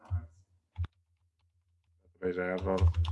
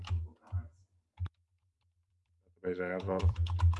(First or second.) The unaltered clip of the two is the first